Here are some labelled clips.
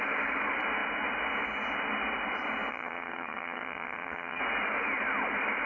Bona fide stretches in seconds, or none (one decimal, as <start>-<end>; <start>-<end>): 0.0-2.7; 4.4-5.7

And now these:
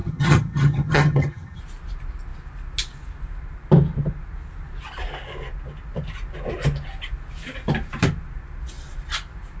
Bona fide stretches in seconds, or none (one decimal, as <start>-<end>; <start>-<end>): 1.6-9.6

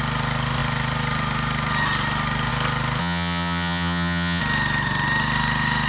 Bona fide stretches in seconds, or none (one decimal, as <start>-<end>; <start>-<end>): 0.0-3.0; 4.4-5.9

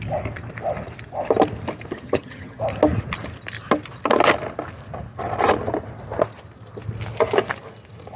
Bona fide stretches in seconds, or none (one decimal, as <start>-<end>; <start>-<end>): 0.0-1.9; 2.6-8.2